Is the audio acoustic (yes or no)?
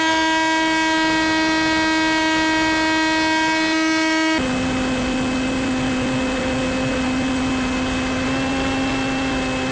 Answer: yes